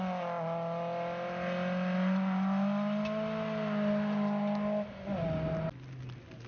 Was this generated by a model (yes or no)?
no